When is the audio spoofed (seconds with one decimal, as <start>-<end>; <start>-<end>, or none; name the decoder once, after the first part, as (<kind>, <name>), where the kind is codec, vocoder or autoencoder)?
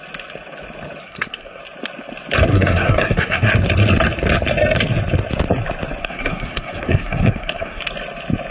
1.0-1.6 (codec, SNAC); 2.5-3.5; 6.0-7.8